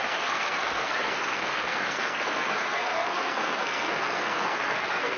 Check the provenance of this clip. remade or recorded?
remade